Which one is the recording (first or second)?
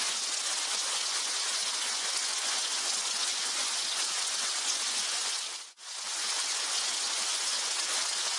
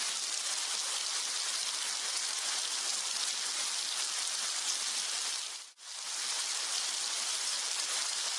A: second